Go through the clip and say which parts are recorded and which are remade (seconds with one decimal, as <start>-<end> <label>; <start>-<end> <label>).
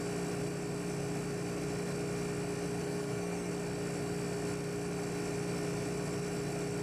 0.0-2.8 recorded; 2.8-3.5 remade; 3.5-6.8 recorded